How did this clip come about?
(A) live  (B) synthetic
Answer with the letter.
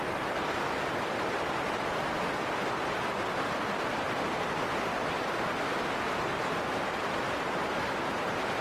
A